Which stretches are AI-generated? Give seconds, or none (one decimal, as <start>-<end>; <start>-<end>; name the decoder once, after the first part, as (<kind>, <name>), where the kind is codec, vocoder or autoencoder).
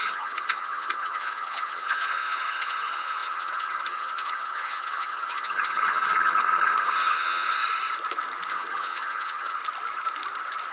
0.0-7.6 (vocoder, HiFi-GAN); 8.5-9.6